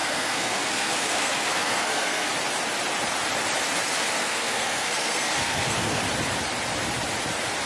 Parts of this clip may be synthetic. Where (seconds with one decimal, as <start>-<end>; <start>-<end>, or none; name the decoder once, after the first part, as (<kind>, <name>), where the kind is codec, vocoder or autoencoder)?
0.0-2.3 (codec, SNAC); 4.2-6.0